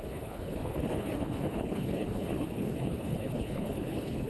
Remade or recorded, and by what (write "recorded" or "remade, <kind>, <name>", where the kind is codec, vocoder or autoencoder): remade, codec, HILCodec